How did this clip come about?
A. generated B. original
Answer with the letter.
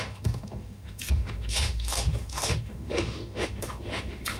A